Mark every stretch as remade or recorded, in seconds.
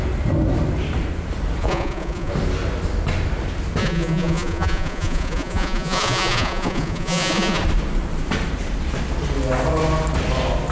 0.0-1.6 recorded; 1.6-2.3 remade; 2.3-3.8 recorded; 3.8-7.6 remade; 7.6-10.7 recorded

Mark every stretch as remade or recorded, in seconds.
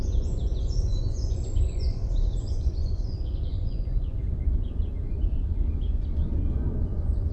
0.0-7.3 remade